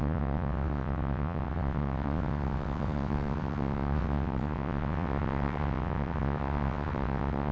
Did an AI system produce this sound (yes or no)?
yes